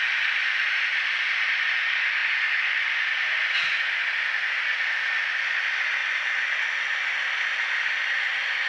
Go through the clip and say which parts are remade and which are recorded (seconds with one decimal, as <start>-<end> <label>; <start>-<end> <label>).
0.0-8.7 recorded